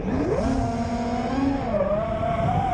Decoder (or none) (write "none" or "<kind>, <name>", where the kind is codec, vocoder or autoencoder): none